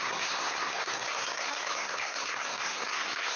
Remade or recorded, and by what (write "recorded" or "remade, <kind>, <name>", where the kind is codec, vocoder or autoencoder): remade, codec, SNAC